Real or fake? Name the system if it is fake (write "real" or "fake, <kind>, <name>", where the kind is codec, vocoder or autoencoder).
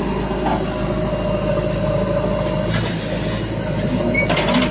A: real